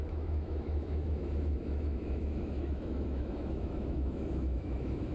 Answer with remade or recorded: remade